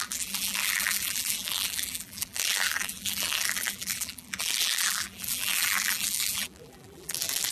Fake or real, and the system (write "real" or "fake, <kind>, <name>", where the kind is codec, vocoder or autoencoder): fake, vocoder, BigVGAN v2